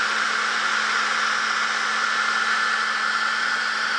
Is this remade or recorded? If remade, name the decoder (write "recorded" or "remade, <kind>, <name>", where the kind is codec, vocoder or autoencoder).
recorded